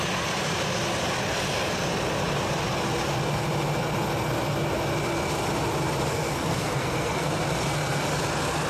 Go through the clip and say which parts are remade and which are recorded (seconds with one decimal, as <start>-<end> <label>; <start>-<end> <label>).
0.0-6.1 recorded; 6.1-7.4 remade; 7.4-8.7 recorded